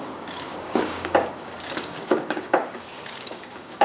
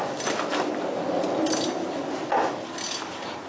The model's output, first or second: first